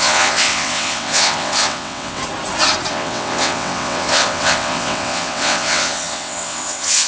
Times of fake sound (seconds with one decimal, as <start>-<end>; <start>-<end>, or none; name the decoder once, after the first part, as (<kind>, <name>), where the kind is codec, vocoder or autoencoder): 0.0-2.2 (vocoder, WaveNeXt); 2.9-7.1

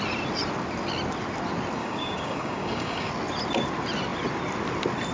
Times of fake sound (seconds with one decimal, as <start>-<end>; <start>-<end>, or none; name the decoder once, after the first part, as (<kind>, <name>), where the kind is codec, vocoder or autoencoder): 1.8-3.1 (codec, DAC)